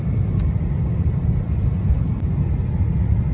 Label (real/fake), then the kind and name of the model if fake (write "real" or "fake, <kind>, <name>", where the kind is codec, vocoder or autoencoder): real